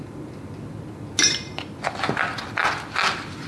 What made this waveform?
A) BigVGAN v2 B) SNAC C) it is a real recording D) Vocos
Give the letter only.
C